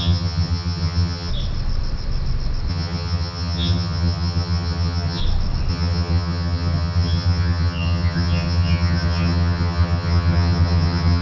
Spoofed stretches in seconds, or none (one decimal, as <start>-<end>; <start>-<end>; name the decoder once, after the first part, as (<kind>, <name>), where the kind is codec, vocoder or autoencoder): 0.0-1.3 (vocoder, HiFi-GAN); 2.7-5.2; 5.7-11.2